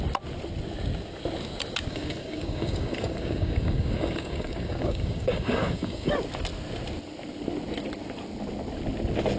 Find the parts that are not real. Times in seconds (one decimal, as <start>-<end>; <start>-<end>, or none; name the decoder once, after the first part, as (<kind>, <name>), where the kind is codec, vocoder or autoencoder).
1.9-6.1 (codec, DAC)